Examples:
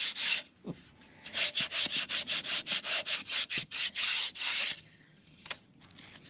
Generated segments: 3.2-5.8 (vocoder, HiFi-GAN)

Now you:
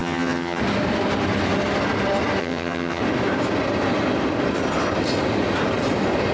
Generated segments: 0.0-0.6 (vocoder, HiFi-GAN); 2.4-3.0